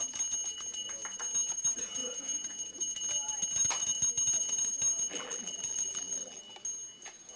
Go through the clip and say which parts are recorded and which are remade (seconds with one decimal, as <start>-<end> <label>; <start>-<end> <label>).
0.0-5.1 recorded; 5.1-6.4 remade; 6.4-7.4 recorded